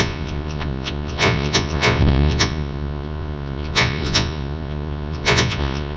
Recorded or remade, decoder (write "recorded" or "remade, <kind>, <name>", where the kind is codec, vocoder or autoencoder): remade, vocoder, Vocos